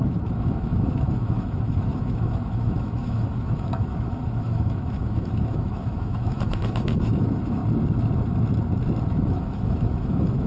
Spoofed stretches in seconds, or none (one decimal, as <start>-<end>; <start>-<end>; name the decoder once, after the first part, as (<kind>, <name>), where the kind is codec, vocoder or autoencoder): 0.0-7.6 (autoencoder, DAC-VAE); 9.0-10.5